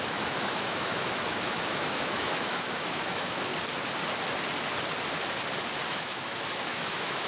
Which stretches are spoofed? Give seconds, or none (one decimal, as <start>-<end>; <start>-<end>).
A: 0.0-3.5; 5.8-7.3